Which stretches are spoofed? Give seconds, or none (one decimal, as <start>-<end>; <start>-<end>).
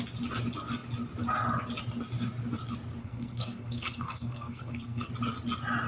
3.0-5.1